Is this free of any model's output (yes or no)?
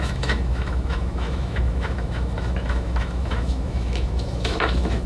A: no